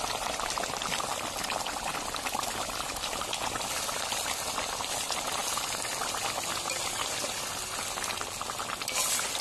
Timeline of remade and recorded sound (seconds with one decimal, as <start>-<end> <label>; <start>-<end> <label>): 0.0-9.4 recorded

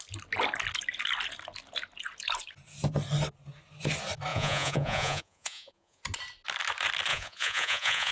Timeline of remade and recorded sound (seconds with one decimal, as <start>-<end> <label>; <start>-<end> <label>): 0.0-4.3 recorded; 4.3-6.0 remade; 6.0-7.1 recorded; 7.1-8.1 remade

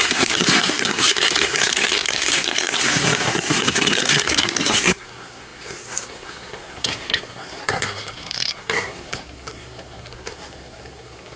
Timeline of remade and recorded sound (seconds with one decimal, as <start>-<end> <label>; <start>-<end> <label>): 0.0-11.4 remade

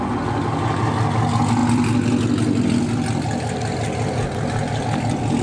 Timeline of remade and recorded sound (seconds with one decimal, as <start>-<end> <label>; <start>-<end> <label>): 0.0-5.4 recorded

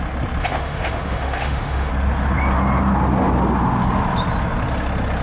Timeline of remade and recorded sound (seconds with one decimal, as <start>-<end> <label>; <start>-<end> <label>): 0.0-0.4 recorded; 0.4-1.9 remade; 1.9-5.2 recorded

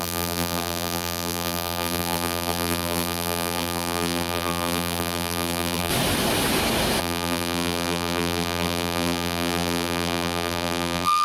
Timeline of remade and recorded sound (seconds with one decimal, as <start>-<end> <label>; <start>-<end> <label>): 0.0-5.9 remade; 5.9-7.0 recorded; 7.0-11.2 remade

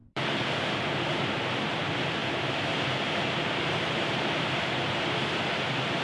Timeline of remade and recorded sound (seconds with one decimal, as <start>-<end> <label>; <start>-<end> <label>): 0.0-1.2 remade; 1.2-2.2 recorded; 2.2-5.1 remade; 5.1-6.0 recorded

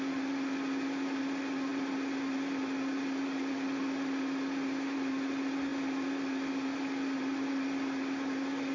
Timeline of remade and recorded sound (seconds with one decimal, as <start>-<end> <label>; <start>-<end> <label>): 0.0-8.7 recorded